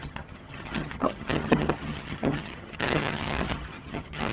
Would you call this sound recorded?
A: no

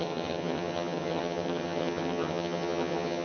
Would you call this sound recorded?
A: no